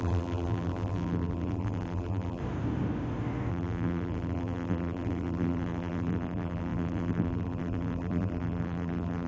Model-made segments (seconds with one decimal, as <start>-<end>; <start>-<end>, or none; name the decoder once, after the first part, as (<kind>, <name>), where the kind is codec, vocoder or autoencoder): 0.0-2.4 (vocoder, BigVGAN v2); 3.5-9.3